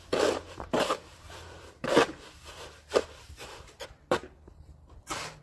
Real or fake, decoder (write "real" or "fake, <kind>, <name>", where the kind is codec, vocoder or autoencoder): fake, vocoder, BigVGAN v2